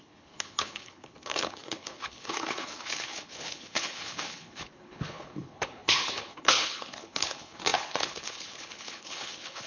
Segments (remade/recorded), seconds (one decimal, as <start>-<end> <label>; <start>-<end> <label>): 0.0-9.7 remade